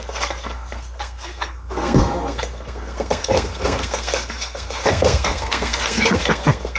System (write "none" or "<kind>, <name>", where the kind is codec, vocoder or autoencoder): codec, SNAC